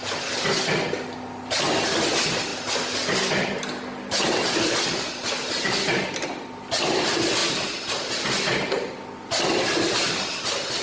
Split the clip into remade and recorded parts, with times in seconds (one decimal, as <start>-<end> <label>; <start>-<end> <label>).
0.0-10.8 recorded